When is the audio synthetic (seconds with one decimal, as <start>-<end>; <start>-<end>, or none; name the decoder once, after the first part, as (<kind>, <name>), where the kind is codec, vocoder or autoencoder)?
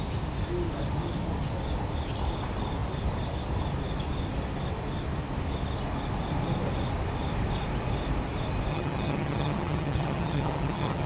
8.7-11.1 (vocoder, HiFi-GAN)